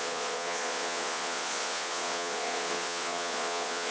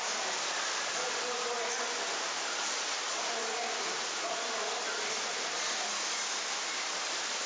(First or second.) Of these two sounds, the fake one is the first